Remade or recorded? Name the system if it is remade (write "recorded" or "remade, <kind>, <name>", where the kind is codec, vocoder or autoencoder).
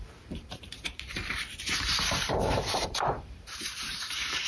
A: remade, vocoder, BigVGAN v2